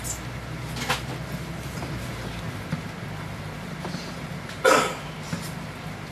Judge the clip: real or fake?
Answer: real